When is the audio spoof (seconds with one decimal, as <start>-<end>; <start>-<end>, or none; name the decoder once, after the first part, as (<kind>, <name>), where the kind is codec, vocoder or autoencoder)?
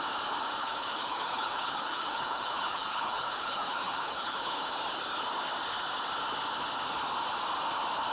0.6-4.7 (codec, HILCodec)